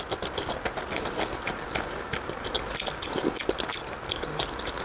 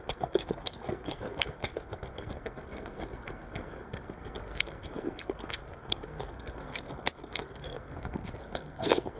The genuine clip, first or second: first